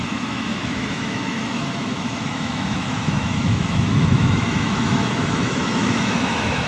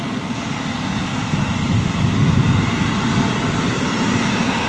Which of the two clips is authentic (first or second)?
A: second